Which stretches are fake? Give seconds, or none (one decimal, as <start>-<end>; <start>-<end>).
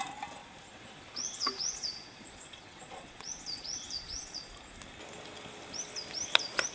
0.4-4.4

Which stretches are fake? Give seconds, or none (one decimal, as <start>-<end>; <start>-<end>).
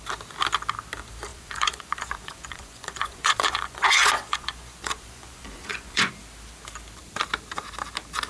1.3-6.1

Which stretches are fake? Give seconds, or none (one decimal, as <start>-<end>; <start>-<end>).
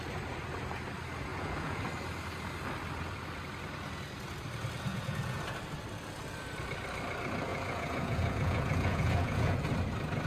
1.3-1.8; 4.9-5.4; 7.5-9.7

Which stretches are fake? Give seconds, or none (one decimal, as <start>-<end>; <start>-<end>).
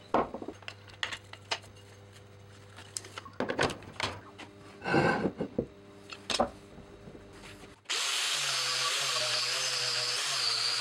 none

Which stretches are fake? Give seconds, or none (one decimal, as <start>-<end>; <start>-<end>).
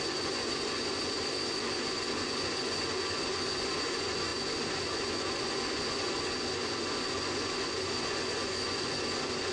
0.0-9.5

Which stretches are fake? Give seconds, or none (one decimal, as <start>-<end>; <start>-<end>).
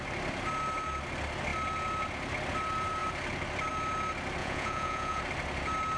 4.4-5.2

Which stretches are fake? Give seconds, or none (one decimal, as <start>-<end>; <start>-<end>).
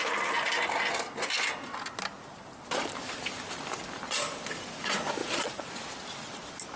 5.2-5.8